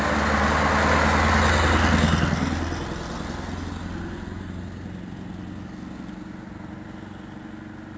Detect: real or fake real